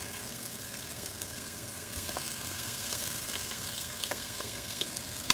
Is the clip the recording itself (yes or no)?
no